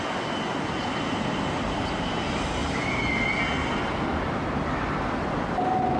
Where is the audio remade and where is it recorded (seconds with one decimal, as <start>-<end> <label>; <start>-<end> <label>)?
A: 0.0-6.0 recorded